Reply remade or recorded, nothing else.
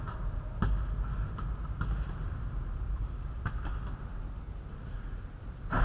recorded